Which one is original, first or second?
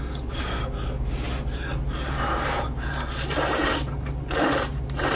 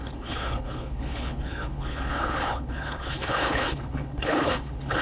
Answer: first